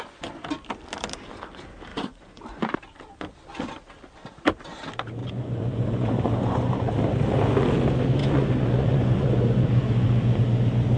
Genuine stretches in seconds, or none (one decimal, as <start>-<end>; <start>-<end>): 0.0-1.9; 2.6-5.2; 6.9-8.2; 10.4-11.0